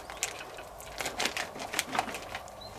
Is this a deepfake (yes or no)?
no